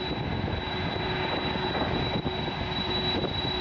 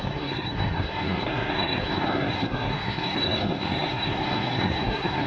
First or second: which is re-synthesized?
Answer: second